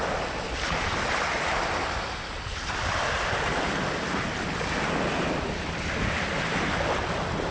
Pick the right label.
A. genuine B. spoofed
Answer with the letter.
A